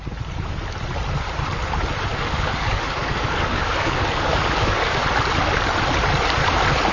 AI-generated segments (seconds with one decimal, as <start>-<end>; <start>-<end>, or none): 2.1-5.0